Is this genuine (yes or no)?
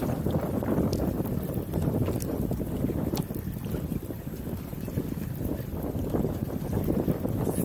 yes